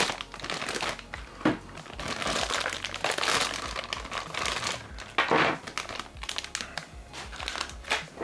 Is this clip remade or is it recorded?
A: recorded